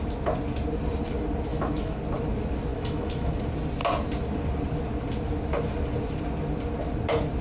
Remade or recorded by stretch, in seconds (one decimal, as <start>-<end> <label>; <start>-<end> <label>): 0.0-1.5 recorded; 1.5-2.0 remade; 2.0-2.7 recorded; 2.7-3.4 remade; 3.4-7.4 recorded